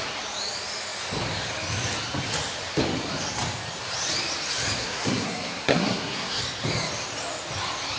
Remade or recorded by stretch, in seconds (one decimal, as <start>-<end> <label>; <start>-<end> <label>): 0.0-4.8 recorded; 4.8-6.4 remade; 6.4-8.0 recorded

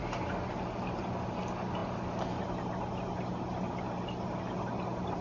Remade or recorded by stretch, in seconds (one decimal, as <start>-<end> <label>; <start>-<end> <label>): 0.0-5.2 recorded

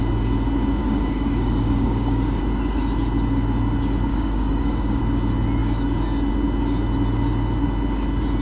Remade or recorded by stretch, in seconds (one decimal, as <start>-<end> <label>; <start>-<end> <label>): 0.0-0.8 recorded; 0.8-2.4 remade; 2.4-4.1 recorded; 4.1-5.0 remade; 5.0-8.4 recorded

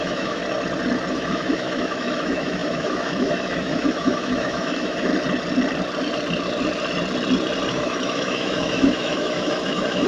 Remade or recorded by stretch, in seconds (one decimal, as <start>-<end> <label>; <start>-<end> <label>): 0.0-0.4 remade; 0.4-1.1 recorded; 1.1-5.1 remade; 5.1-7.7 recorded; 7.7-10.1 remade

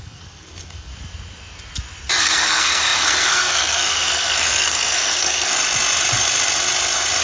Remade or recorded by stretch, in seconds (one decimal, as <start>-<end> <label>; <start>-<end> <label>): 0.0-0.9 remade; 0.9-2.2 recorded; 2.2-5.5 remade; 5.5-7.2 recorded